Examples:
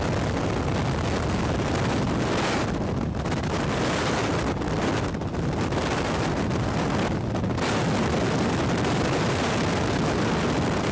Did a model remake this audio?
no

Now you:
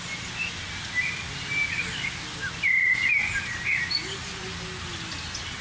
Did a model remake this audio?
no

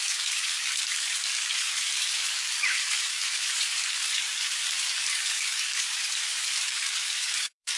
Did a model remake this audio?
yes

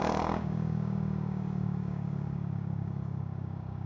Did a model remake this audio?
yes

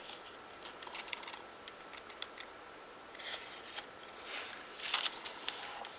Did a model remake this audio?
no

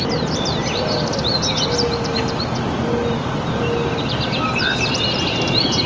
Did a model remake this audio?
no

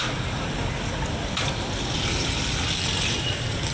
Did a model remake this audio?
no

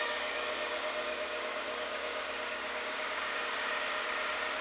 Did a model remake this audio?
yes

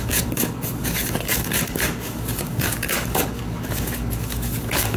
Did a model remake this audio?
yes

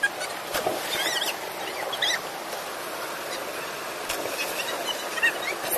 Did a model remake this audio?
no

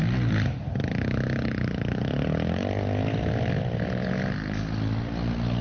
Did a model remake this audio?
no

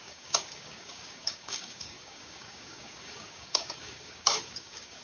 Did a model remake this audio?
yes